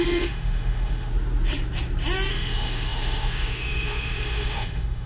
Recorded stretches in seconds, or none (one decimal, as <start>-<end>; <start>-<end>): 1.1-2.3